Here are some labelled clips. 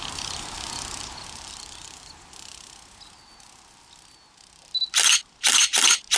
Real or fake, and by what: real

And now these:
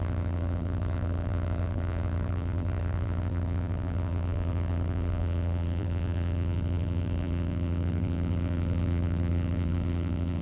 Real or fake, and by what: fake, vocoder, BigVGAN v2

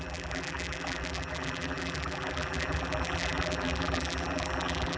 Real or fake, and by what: fake, vocoder, BigVGAN v2